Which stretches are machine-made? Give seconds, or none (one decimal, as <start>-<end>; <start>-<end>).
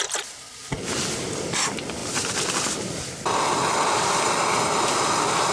none